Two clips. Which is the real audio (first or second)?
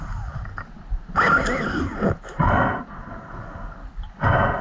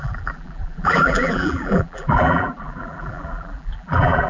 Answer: first